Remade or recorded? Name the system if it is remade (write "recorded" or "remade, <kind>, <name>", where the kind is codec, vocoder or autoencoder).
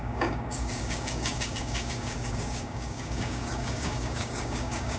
remade, codec, DAC